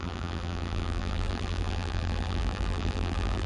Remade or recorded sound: remade